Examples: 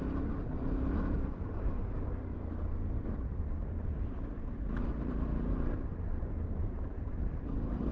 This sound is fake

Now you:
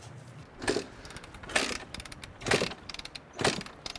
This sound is real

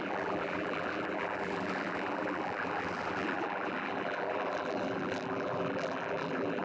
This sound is fake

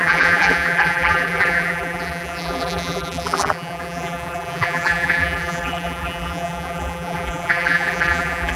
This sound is fake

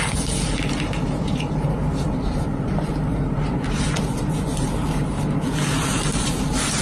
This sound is fake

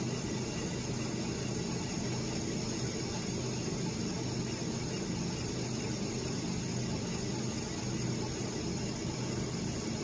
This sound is real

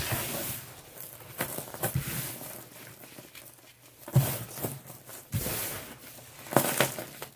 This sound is fake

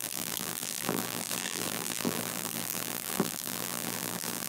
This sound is fake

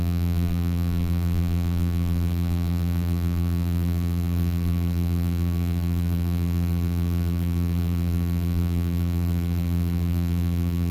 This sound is fake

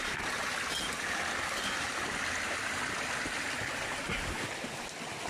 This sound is real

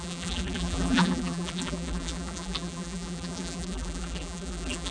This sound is fake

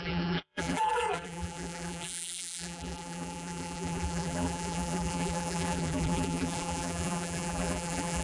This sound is fake